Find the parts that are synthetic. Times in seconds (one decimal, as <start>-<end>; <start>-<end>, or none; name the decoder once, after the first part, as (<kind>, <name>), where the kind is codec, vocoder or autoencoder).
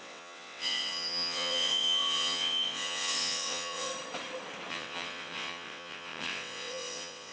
0.0-3.9 (vocoder, WaveNeXt); 4.7-7.3